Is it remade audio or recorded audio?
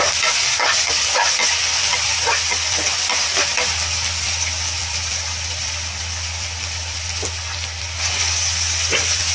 recorded